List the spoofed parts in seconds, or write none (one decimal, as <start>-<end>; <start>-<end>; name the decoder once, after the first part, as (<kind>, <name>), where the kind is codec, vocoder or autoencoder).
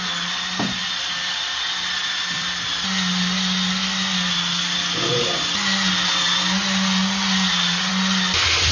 none